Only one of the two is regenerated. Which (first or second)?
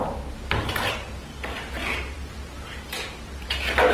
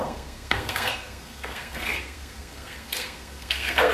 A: second